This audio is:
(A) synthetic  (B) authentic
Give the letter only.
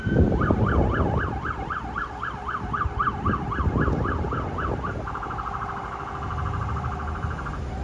B